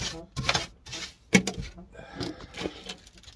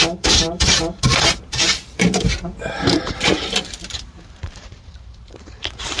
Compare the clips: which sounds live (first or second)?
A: first